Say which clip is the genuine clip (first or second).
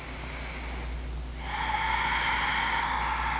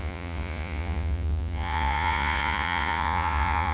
first